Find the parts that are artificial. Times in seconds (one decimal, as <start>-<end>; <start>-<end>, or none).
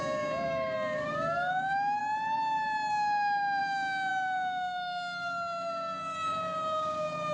0.0-2.0; 2.9-7.3